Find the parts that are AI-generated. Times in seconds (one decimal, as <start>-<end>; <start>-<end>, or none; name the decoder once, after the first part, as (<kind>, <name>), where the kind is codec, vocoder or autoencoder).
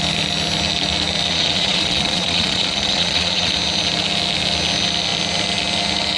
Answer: 1.3-3.5 (vocoder, Vocos)